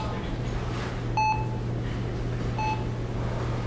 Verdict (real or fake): real